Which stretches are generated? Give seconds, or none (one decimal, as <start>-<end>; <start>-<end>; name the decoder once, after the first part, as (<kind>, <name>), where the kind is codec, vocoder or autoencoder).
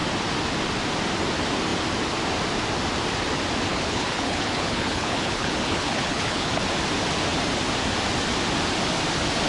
3.7-6.5 (codec, HILCodec)